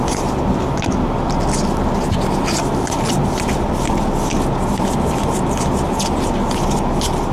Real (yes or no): yes